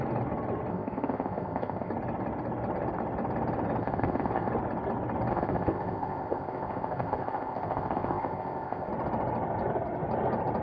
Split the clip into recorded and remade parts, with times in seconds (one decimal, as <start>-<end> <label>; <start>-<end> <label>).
0.0-0.7 recorded; 0.7-1.9 remade; 1.9-3.8 recorded; 3.8-4.5 remade; 4.5-5.3 recorded; 5.3-8.9 remade; 8.9-10.6 recorded